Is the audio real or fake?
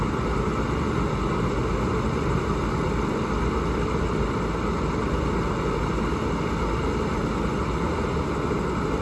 real